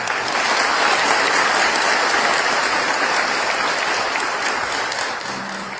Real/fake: real